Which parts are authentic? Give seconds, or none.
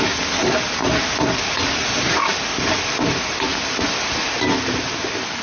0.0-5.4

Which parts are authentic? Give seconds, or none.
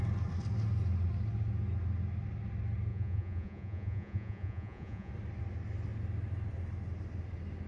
0.0-2.9; 5.1-7.7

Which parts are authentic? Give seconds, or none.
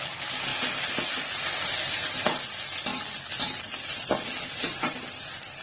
0.0-5.6